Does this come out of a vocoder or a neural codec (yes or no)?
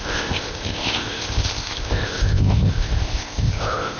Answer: yes